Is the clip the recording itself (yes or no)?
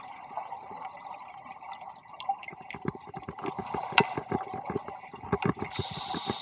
yes